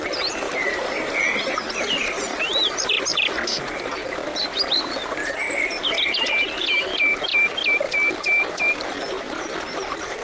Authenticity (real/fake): real